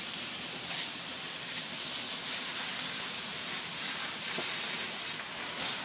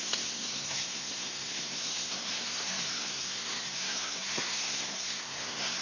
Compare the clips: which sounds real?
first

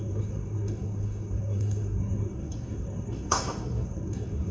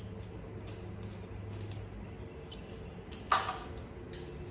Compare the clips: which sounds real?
second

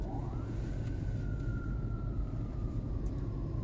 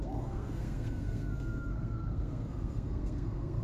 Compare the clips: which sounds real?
first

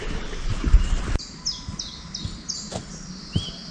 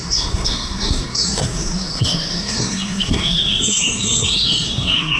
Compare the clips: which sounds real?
first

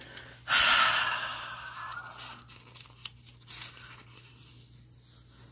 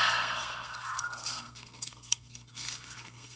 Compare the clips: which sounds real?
first